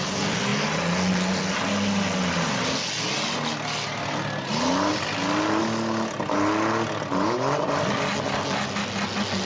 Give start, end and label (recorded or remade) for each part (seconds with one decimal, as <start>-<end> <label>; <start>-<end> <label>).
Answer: 0.0-9.4 recorded